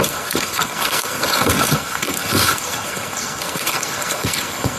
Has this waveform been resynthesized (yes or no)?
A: yes